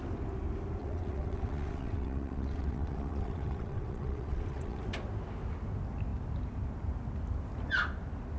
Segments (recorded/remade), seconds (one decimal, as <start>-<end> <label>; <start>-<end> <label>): 0.0-0.8 recorded; 0.8-4.8 remade; 4.8-8.4 recorded

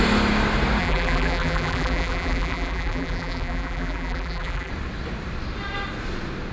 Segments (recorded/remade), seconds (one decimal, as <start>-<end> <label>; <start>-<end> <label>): 0.0-0.8 recorded; 0.8-4.7 remade; 4.7-6.5 recorded

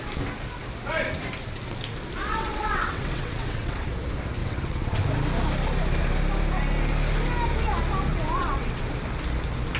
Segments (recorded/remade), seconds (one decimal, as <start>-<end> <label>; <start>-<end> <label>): 0.0-2.3 recorded; 2.3-3.9 remade; 3.9-4.4 recorded; 4.4-5.0 remade; 5.0-8.1 recorded; 8.1-8.9 remade; 8.9-9.8 recorded

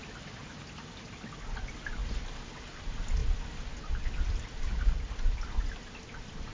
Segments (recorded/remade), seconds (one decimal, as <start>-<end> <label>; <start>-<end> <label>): 0.0-6.5 recorded